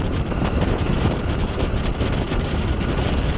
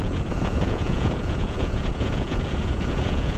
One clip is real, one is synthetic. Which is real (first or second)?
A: first